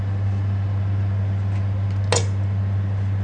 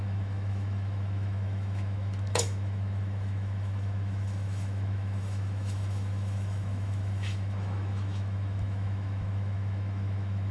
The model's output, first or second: second